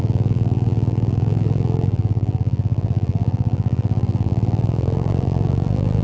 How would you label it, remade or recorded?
remade